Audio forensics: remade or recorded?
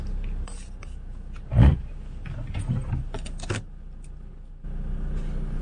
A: recorded